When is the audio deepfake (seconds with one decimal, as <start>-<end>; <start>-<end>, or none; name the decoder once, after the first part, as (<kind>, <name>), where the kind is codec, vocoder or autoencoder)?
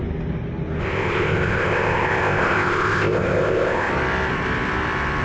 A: 0.8-3.9 (codec, ZipCodec)